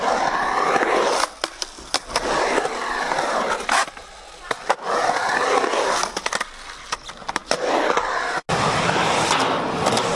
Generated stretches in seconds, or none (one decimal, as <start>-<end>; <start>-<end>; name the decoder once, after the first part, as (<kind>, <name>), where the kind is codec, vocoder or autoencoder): none